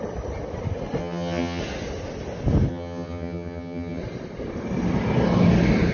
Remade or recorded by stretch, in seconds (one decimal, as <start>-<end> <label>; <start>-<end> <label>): 0.0-1.0 recorded; 1.0-1.6 remade; 1.6-2.7 recorded; 2.7-4.0 remade; 4.0-5.9 recorded